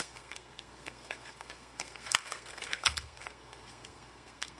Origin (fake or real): fake